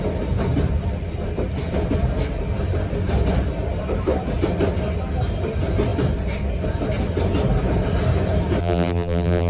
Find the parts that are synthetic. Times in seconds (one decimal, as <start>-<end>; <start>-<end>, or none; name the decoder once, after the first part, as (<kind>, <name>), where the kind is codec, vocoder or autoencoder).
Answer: 8.6-9.5 (vocoder, BigVGAN v2)